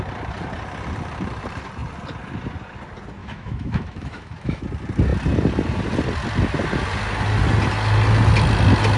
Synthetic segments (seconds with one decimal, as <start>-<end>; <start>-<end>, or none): 3.2-4.6